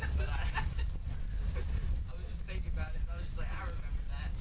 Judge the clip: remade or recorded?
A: recorded